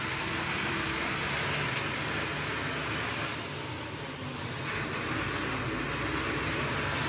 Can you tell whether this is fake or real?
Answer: real